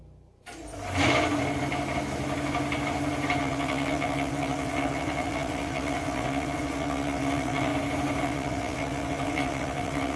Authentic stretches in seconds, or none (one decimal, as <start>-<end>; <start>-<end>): 0.0-3.4; 7.7-8.2